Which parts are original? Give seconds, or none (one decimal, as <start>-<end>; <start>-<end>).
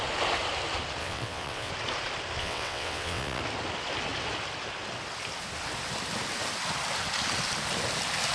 0.0-1.0; 1.7-2.4; 3.4-8.3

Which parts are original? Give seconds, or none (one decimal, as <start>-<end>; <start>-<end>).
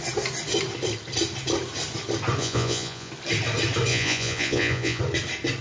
0.0-2.4; 3.1-3.9; 5.0-5.6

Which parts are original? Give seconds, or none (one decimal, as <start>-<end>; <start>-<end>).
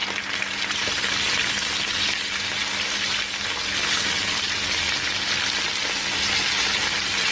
0.0-7.3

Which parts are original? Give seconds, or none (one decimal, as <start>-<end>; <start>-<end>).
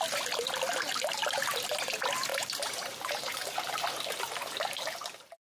0.0-2.3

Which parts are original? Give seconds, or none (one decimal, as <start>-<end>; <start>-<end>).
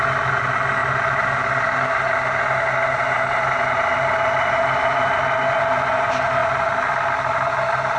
0.0-8.0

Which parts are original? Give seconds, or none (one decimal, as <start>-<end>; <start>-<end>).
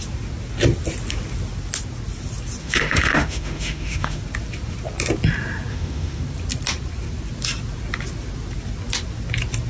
0.0-2.6; 4.2-5.7; 6.2-9.7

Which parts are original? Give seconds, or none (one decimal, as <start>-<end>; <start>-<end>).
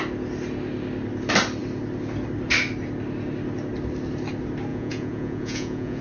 0.0-4.7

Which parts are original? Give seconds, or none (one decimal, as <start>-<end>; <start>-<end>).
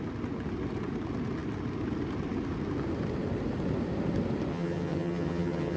0.0-4.5